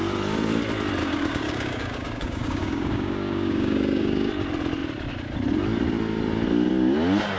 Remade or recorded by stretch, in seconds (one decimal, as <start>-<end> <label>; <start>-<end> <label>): 0.0-1.0 recorded; 1.0-4.3 remade; 4.3-7.4 recorded